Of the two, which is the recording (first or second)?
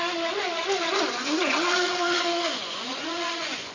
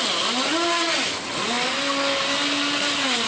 second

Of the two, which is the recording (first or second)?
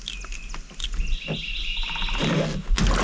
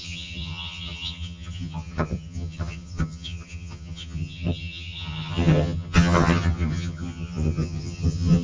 first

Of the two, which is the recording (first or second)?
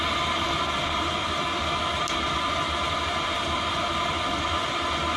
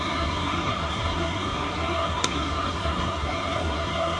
first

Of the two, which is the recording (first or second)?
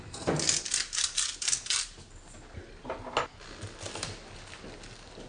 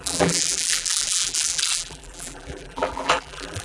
first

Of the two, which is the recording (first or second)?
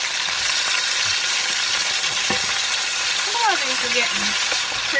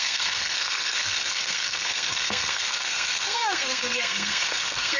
first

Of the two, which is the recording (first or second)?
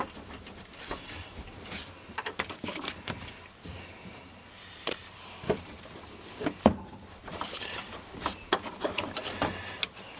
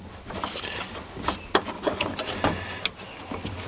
second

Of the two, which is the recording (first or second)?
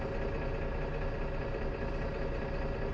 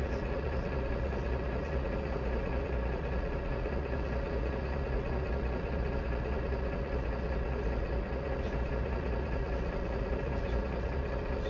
first